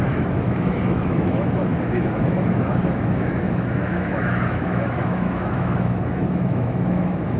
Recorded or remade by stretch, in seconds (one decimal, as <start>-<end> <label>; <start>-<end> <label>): 0.0-7.4 remade